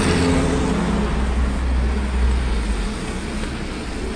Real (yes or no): yes